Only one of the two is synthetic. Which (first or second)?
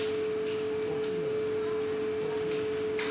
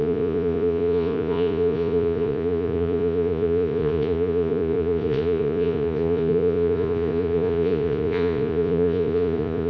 second